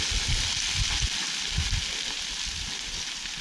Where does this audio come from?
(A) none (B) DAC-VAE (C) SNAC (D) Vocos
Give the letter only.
A